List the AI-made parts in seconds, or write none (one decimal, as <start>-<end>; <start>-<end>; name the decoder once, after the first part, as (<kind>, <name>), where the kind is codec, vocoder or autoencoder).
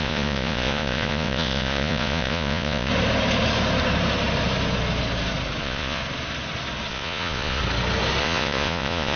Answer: 0.0-2.9 (vocoder, Vocos); 5.6-6.0; 6.9-7.6; 8.2-9.2